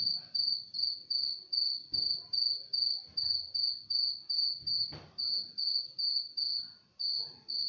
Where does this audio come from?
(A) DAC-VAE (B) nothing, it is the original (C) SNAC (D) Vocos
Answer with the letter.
B